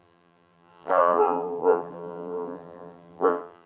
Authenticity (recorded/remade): remade